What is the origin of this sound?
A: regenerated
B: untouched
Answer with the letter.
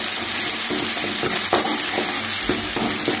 B